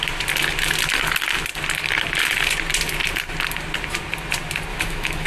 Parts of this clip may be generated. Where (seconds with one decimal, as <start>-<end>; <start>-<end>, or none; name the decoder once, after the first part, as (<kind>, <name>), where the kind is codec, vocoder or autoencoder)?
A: 4.7-5.3 (autoencoder, DAC-VAE)